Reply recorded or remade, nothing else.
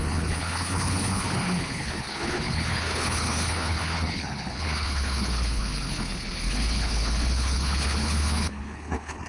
remade